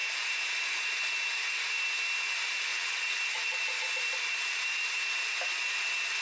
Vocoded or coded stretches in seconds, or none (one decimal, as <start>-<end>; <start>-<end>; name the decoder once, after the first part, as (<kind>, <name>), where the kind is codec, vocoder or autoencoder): 2.7-3.2 (vocoder, WaveNeXt)